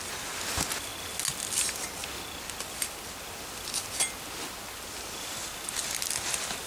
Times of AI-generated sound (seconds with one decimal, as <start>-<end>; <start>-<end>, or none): none